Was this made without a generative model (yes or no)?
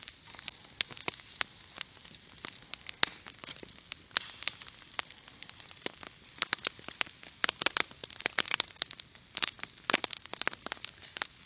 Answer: yes